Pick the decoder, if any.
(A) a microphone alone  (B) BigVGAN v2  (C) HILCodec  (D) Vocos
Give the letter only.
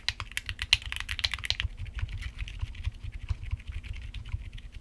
A